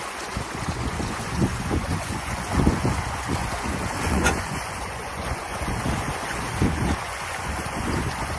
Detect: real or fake fake